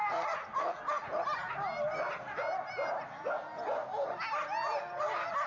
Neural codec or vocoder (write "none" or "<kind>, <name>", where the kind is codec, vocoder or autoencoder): none